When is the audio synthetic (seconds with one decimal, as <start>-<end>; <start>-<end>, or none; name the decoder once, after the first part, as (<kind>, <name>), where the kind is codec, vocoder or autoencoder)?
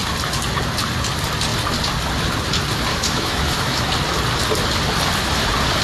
2.9-3.9 (autoencoder, DAC-VAE)